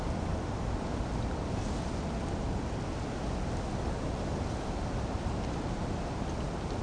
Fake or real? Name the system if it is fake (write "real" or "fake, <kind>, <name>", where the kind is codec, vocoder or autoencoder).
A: real